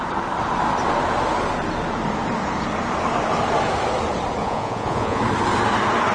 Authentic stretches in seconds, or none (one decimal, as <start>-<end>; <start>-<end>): 0.0-4.4; 5.2-6.1